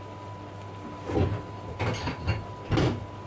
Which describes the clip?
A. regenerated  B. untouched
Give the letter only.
B